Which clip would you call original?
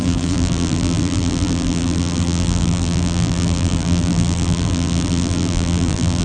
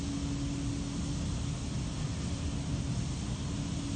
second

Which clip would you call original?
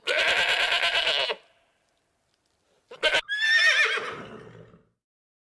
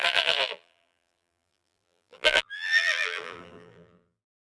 first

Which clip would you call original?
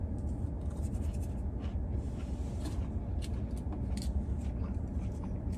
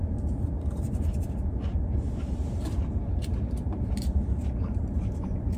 first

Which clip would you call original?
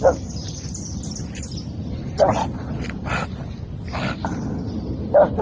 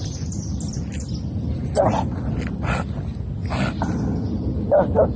second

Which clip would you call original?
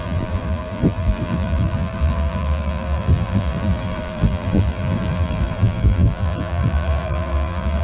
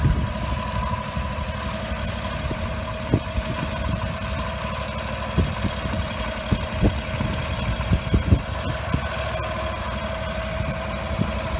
second